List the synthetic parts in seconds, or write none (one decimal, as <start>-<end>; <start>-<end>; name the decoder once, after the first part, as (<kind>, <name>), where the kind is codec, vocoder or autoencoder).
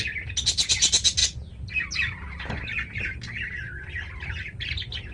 none